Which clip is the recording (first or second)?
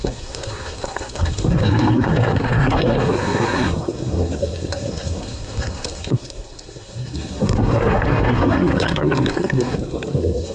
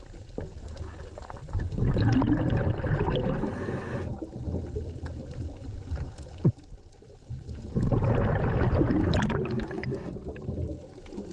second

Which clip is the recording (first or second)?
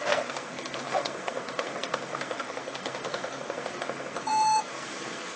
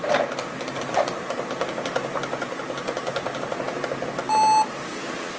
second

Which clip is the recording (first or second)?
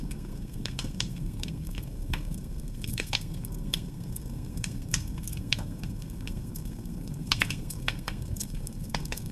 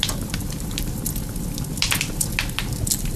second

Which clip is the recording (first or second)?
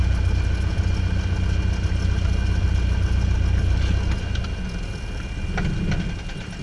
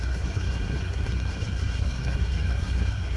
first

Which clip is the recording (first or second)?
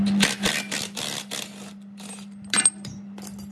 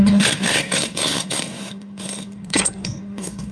first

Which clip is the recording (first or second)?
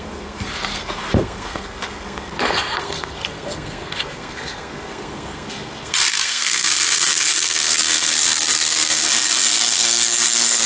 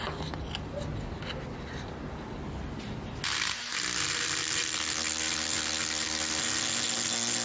second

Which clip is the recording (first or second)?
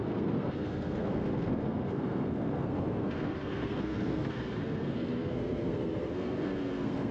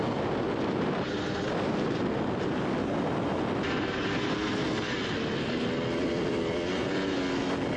second